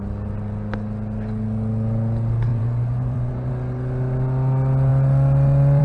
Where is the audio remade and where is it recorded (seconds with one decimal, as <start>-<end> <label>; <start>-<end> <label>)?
0.0-2.5 recorded; 2.5-3.5 remade; 3.5-5.8 recorded